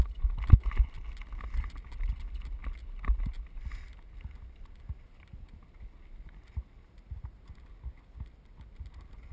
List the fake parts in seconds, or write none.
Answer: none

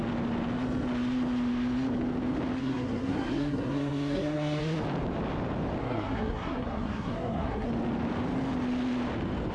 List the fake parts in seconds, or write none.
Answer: 2.6-4.6 (codec, SNAC); 5.8-7.7

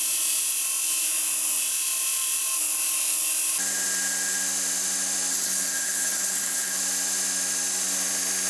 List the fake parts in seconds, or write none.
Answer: 5.3-6.8 (codec, HILCodec)